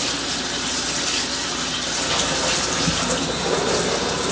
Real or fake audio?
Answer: real